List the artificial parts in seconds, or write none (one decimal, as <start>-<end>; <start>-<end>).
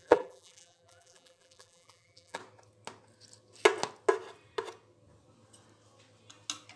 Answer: 0.0-2.4